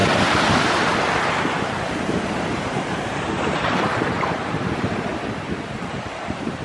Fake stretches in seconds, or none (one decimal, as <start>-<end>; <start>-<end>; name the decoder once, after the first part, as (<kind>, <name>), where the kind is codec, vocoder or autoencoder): 2.4-5.1 (vocoder, BigVGAN v2); 5.9-6.6